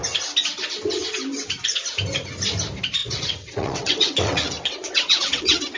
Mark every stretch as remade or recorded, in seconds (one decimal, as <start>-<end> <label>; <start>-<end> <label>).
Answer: 0.0-3.0 recorded; 3.0-5.8 remade